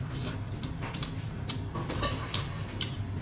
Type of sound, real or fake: real